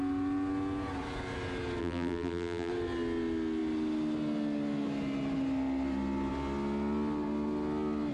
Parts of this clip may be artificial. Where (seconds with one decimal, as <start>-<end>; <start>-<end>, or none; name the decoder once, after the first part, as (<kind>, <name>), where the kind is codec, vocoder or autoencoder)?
1.8-2.7 (vocoder, BigVGAN v2)